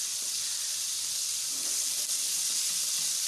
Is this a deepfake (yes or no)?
no